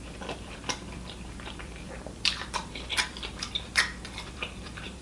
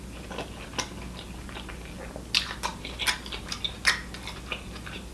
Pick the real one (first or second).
second